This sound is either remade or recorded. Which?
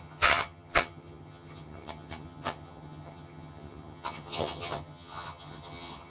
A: remade